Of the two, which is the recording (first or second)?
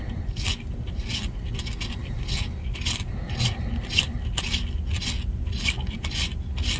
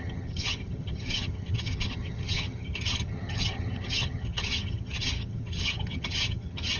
first